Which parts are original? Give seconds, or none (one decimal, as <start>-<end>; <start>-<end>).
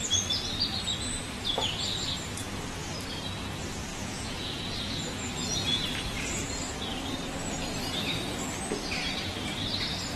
0.0-3.9; 6.5-10.2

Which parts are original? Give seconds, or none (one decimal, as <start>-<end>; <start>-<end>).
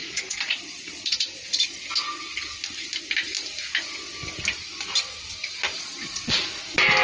1.9-5.7; 6.4-7.0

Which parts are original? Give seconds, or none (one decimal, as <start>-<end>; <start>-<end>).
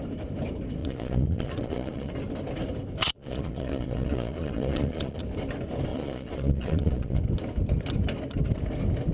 0.0-0.8; 2.1-3.0; 5.2-5.9; 7.2-9.1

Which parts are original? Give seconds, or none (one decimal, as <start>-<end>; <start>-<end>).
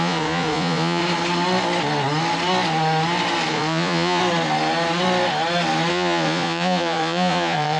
1.0-3.5; 4.2-5.9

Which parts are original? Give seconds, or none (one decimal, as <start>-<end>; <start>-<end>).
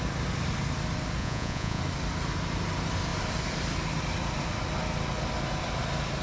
0.0-1.2; 1.8-6.2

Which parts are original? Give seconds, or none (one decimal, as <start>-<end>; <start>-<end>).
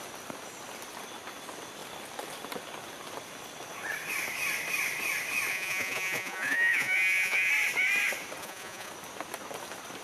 0.0-5.5; 7.5-8.4; 8.9-10.0